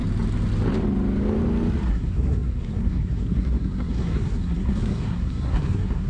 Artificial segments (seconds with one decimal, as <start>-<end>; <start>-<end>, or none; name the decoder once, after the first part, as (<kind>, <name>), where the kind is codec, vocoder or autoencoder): 1.9-6.1 (codec, SNAC)